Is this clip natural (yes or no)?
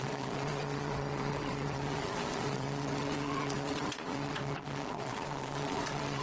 no